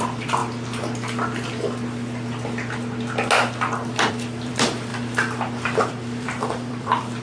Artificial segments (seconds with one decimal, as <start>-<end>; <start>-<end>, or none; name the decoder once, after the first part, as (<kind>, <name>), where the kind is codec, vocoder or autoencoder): 0.0-0.4 (vocoder, BigVGAN v2); 4.1-7.2